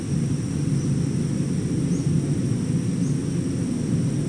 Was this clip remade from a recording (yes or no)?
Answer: no